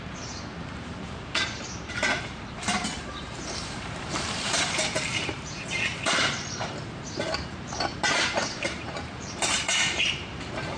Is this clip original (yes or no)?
no